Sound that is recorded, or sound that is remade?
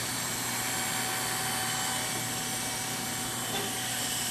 recorded